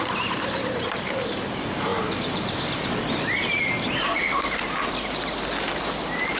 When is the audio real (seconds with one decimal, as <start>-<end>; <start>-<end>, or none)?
4.1-5.7